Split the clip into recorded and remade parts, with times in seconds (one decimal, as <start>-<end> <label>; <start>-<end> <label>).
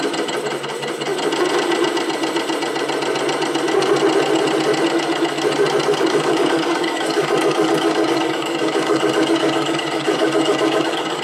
0.0-5.9 recorded; 5.9-11.2 remade